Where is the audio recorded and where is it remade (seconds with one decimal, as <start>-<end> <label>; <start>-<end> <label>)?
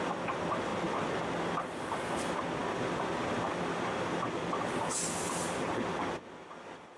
0.0-7.0 recorded